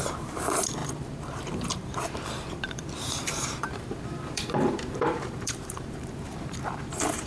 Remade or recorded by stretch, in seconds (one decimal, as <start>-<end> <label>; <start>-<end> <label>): 0.0-7.3 remade